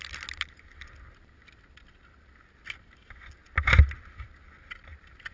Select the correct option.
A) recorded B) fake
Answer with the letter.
A